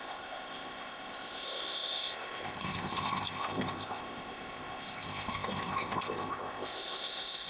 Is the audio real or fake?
fake